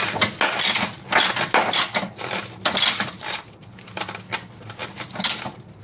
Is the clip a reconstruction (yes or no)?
no